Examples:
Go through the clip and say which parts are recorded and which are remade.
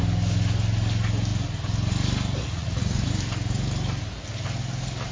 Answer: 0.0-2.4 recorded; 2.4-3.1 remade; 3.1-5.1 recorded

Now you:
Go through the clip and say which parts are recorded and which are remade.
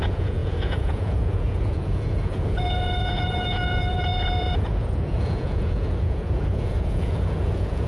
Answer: 0.0-7.9 remade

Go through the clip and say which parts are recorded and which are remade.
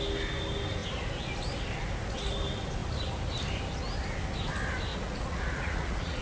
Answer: 0.0-4.9 recorded; 4.9-6.2 remade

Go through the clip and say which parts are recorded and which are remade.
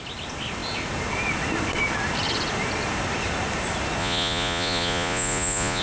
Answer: 0.0-4.0 recorded; 4.0-5.8 remade